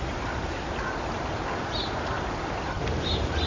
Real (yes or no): yes